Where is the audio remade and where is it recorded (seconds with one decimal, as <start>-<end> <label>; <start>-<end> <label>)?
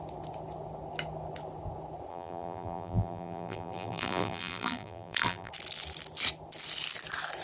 0.0-2.1 recorded; 2.1-5.5 remade; 5.5-7.4 recorded